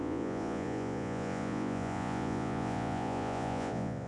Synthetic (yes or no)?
yes